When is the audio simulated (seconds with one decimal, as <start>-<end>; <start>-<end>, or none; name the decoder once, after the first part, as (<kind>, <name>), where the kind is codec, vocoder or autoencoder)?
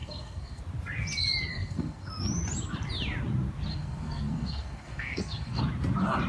0.0-0.6 (codec, SNAC); 1.5-2.1; 3.7-5.6